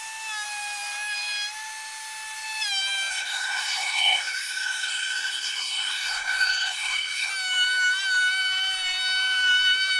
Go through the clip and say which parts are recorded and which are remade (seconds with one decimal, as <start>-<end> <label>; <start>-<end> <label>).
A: 0.0-3.1 recorded; 3.1-7.3 remade; 7.3-10.0 recorded